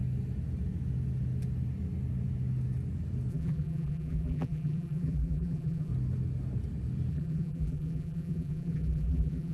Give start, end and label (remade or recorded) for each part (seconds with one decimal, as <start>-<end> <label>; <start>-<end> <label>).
0.0-3.3 recorded; 3.3-5.9 remade; 5.9-7.1 recorded; 7.1-9.5 remade